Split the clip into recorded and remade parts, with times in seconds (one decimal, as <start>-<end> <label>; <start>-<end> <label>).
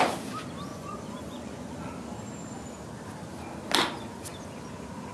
0.0-0.7 recorded; 0.7-1.9 remade; 1.9-5.1 recorded